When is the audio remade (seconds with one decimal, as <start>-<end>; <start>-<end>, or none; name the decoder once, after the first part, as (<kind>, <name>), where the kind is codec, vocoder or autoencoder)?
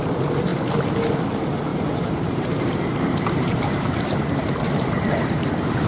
0.0-0.5 (vocoder, BigVGAN v2); 1.1-5.9